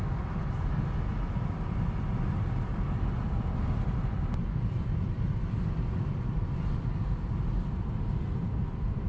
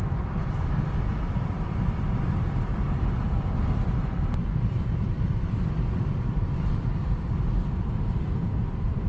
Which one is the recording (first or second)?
first